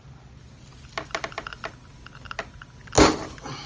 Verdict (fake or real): real